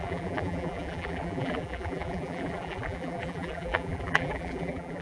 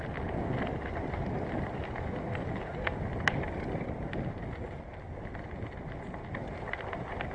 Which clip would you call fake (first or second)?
first